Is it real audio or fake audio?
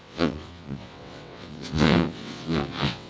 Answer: fake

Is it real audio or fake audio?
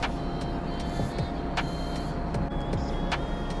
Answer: real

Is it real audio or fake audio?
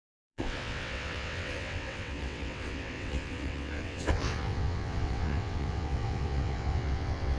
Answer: fake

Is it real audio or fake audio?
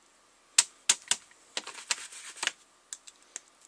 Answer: real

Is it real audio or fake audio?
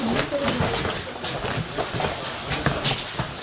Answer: real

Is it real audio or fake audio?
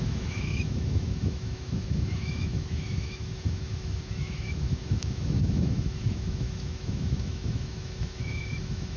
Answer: fake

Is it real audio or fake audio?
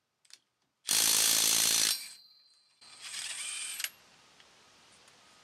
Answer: real